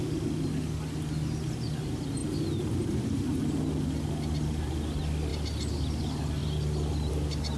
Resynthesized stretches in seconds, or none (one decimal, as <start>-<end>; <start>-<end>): none